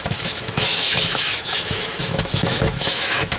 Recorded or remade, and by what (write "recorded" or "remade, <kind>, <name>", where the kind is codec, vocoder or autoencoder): remade, autoencoder, DAC-VAE